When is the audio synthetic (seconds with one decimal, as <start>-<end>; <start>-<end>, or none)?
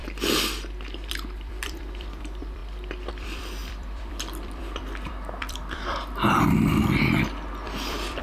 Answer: 1.1-2.6; 3.1-8.2